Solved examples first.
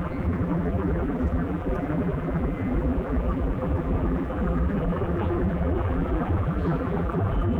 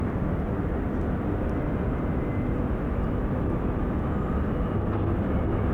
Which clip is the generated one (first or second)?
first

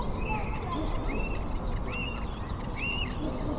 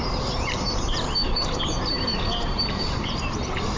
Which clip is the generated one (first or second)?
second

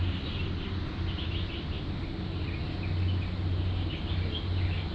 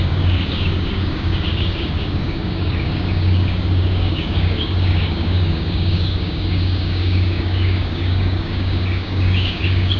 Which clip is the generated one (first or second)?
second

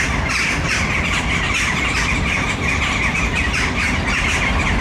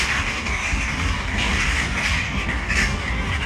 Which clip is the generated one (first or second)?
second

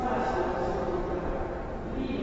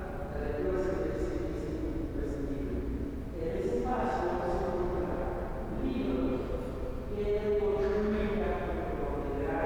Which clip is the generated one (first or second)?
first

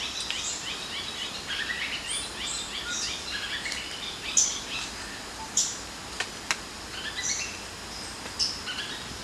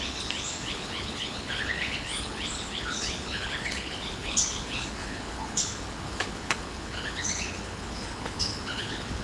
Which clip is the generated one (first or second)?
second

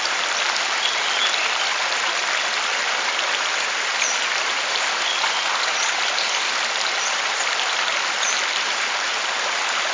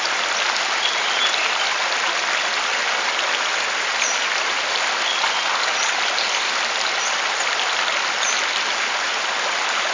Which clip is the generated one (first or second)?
first